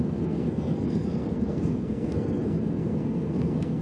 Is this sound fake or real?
fake